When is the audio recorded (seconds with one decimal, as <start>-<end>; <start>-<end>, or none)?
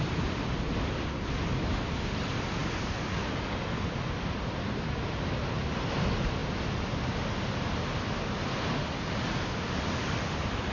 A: 0.0-10.7